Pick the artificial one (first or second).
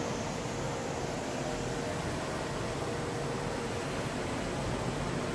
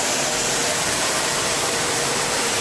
second